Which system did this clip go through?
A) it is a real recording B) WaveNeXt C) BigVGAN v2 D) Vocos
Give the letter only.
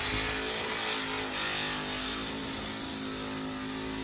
A